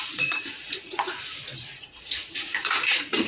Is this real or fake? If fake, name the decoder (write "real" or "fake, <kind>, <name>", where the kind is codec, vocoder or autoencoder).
fake, vocoder, Vocos